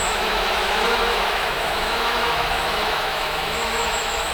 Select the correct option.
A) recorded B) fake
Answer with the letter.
B